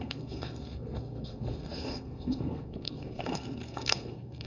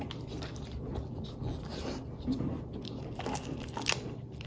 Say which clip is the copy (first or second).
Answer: first